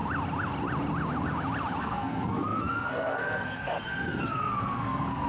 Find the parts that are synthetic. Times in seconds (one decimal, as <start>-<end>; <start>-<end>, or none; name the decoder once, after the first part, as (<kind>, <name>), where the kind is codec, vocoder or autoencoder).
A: 1.8-5.3 (codec, SNAC)